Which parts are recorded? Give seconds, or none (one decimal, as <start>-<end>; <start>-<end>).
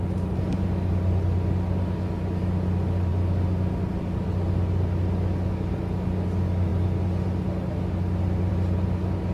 0.0-9.3